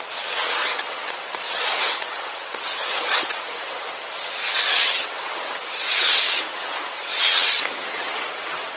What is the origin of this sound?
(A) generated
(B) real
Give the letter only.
A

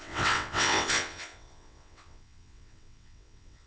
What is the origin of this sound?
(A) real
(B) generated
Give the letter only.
B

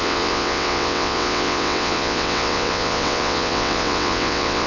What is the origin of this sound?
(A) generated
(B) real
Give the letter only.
A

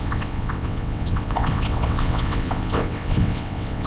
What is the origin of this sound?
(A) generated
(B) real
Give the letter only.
A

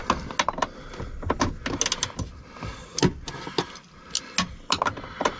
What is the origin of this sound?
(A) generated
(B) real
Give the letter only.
B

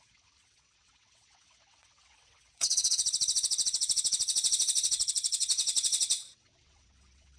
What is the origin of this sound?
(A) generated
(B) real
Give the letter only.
A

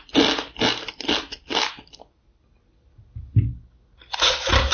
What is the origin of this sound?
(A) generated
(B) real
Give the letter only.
B